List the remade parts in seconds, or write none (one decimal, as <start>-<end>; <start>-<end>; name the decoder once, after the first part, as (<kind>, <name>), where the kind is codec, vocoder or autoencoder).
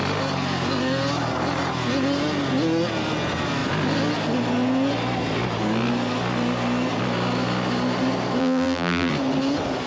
8.4-9.1 (vocoder, BigVGAN v2)